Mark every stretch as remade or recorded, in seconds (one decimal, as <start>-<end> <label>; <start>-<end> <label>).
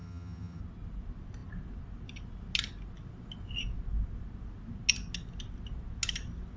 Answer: 0.0-0.6 remade; 0.6-6.6 recorded